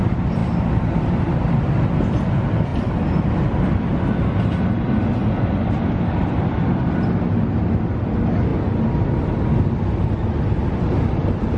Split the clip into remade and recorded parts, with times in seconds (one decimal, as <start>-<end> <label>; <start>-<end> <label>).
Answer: 0.0-11.6 recorded